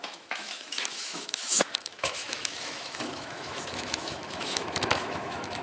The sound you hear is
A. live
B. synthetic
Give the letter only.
B